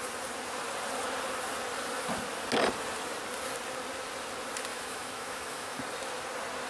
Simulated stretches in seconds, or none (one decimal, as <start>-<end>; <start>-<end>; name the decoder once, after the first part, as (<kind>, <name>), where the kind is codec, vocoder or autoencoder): 4.7-5.8 (autoencoder, DAC-VAE)